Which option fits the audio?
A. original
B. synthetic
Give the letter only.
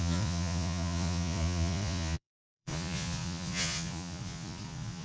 B